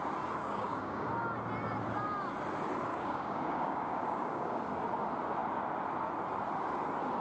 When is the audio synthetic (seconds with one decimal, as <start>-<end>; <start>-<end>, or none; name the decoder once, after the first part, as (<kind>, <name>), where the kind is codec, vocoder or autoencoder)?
0.4-1.1 (codec, DAC); 2.9-4.6